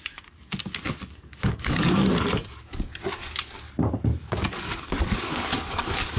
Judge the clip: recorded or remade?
remade